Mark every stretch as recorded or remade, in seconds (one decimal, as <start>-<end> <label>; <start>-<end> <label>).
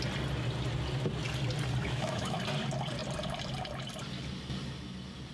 0.0-1.8 recorded; 1.8-2.4 remade; 2.4-5.3 recorded